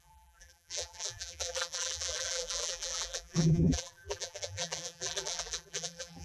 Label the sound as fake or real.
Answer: fake